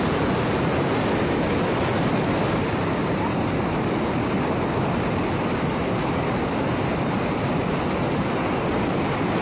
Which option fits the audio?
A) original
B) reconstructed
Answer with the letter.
A